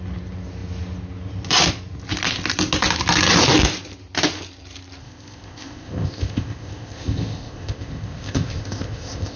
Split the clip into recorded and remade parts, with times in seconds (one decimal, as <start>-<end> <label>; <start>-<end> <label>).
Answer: 0.0-5.0 recorded; 5.0-9.4 remade